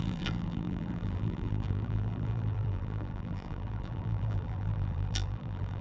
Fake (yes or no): yes